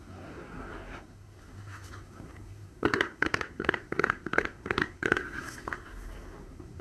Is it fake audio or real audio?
fake